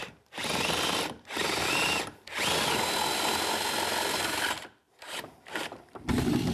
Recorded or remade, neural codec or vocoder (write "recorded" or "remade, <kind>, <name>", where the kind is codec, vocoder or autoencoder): recorded